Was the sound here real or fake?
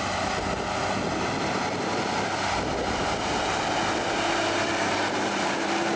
real